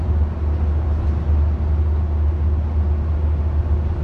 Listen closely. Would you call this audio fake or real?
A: real